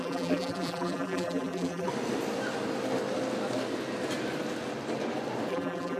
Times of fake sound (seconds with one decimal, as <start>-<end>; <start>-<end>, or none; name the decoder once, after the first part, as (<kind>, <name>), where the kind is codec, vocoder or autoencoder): 0.0-1.9 (vocoder, BigVGAN v2); 5.5-6.0